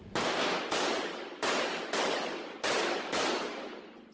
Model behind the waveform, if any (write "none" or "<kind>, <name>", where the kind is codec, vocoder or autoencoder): none